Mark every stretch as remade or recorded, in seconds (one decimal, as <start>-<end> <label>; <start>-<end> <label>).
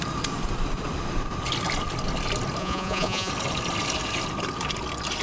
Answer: 0.0-2.6 recorded; 2.6-3.3 remade; 3.3-5.2 recorded